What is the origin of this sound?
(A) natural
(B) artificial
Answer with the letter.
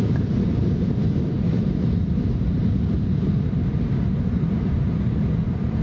B